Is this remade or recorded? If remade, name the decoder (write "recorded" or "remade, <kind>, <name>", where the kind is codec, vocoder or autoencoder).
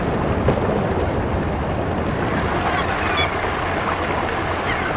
recorded